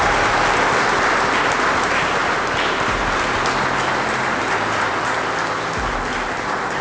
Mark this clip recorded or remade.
recorded